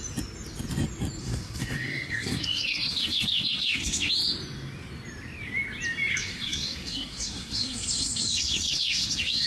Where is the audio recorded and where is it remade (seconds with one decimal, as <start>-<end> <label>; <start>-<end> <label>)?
0.0-1.2 recorded; 1.2-4.1 remade; 4.1-6.1 recorded; 6.1-9.5 remade